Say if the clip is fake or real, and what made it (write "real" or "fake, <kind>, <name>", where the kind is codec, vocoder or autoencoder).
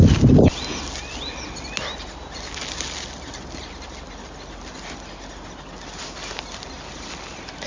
real